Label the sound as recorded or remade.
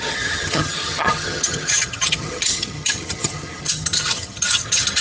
remade